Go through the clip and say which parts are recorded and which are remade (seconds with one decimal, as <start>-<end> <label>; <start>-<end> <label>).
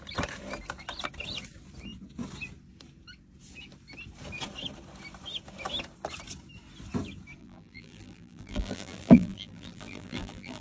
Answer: 0.0-7.4 recorded; 7.4-10.6 remade